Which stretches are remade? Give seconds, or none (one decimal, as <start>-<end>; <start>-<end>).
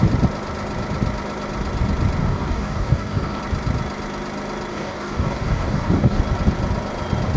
2.2-3.4; 4.7-6.2